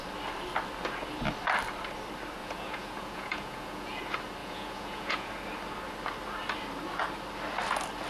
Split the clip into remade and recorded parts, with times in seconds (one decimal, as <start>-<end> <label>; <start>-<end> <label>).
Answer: 0.0-2.4 recorded; 2.4-4.0 remade; 4.0-4.4 recorded; 4.4-5.3 remade; 5.3-8.1 recorded